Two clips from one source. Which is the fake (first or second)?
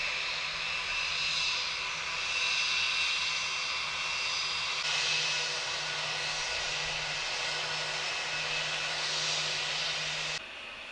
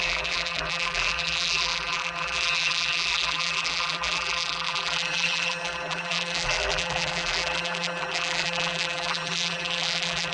second